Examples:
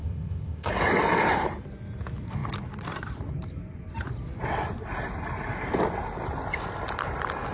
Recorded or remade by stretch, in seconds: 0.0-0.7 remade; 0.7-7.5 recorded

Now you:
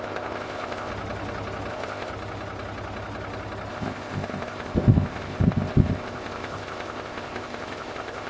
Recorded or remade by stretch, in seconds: 0.0-0.9 remade; 0.9-1.7 recorded; 1.7-2.1 remade; 2.1-3.7 recorded; 3.7-8.3 remade

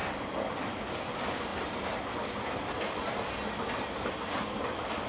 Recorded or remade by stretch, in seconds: 0.0-5.1 recorded

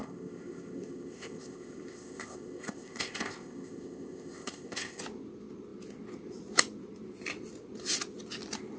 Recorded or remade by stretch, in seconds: 0.0-5.0 remade; 5.0-8.8 recorded